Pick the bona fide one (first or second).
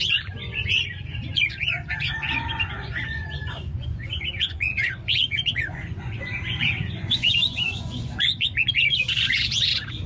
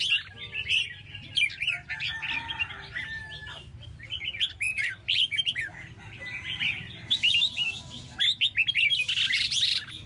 second